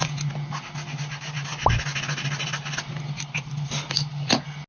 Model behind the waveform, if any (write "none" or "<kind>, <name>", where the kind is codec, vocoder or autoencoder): none